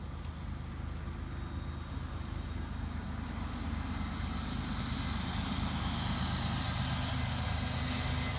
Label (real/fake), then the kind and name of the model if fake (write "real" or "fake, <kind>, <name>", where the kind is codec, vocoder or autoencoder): real